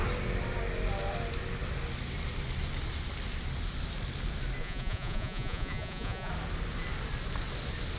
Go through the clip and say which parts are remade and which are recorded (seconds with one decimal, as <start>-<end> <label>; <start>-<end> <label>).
0.0-4.6 recorded; 4.6-6.3 remade; 6.3-8.0 recorded